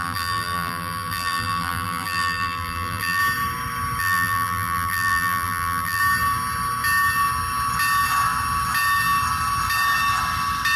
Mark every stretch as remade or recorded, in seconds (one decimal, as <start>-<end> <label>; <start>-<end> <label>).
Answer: 0.0-3.2 remade; 3.2-4.0 recorded; 4.0-6.0 remade; 6.0-10.8 recorded